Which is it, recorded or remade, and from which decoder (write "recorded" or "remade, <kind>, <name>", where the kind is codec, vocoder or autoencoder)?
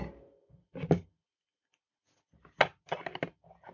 recorded